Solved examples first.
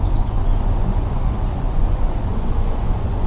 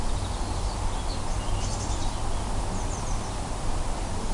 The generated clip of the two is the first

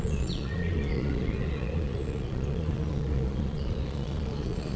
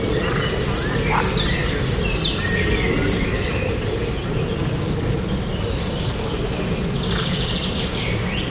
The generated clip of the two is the first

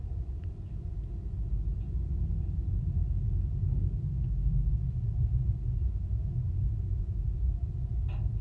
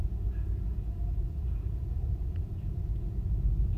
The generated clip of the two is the second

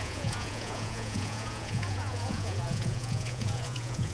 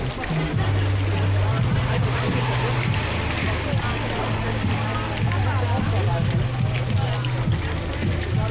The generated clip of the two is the first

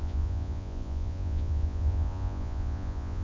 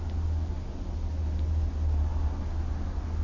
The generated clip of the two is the first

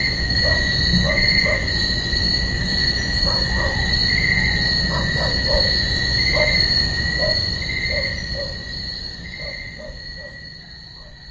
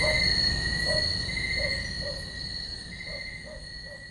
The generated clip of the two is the first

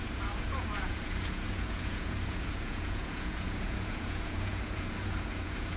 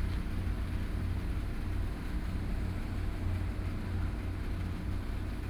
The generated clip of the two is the first